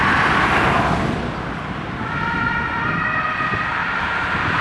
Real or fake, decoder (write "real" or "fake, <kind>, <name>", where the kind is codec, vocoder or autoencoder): real